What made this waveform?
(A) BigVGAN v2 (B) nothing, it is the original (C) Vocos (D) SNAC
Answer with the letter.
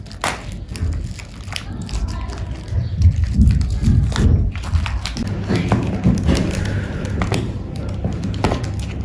B